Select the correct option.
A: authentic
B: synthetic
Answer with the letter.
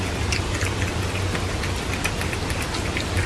A